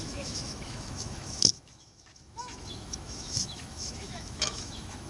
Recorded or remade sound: remade